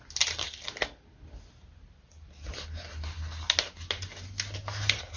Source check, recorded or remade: recorded